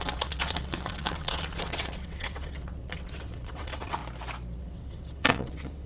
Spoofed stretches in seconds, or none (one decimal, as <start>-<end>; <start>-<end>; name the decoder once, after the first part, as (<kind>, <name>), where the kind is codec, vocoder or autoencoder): 0.0-4.0 (vocoder, WaveNeXt); 4.6-5.9